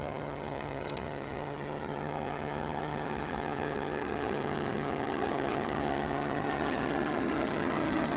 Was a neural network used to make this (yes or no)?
yes